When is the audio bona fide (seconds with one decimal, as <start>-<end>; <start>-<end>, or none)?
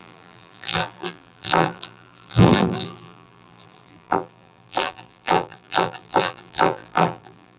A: none